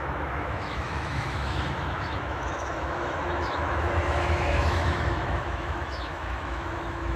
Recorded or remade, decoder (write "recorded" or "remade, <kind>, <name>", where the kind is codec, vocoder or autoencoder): remade, autoencoder, DAC-VAE